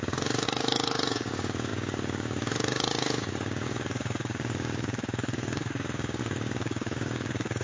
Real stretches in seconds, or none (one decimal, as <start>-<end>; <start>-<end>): none